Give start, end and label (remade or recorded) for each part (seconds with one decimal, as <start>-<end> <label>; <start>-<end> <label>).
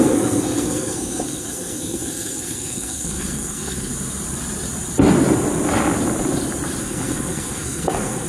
0.0-3.9 remade; 3.9-6.8 recorded; 6.8-8.3 remade